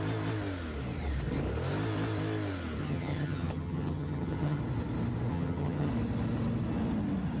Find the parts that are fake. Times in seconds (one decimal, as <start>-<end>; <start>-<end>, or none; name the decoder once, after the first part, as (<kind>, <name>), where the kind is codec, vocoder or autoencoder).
2.8-4.6 (vocoder, HiFi-GAN); 5.3-5.9